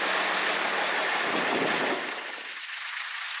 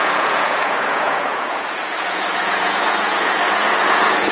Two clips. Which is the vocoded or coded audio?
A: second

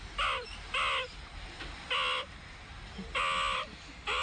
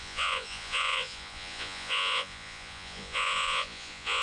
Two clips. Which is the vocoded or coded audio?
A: second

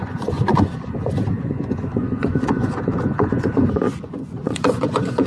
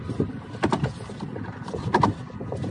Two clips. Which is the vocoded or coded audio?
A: first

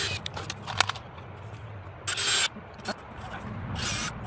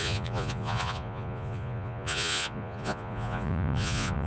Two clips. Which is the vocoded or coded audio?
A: second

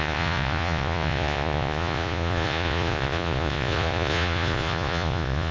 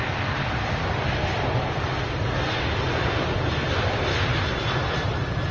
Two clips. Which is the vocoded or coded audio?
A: first